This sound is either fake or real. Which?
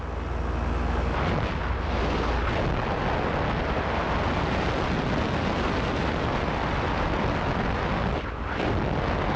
real